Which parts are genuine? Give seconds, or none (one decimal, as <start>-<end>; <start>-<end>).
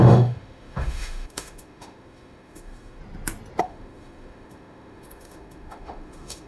3.0-3.6